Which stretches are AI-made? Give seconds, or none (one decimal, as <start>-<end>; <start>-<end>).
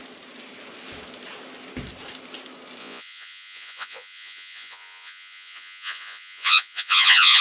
2.8-7.4